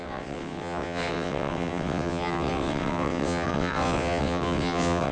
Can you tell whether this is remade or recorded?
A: remade